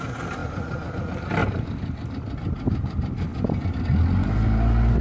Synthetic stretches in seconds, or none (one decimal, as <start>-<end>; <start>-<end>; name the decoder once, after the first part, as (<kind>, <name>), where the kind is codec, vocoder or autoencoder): none